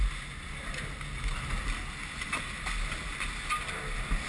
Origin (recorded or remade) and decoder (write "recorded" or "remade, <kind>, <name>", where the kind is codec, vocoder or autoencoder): recorded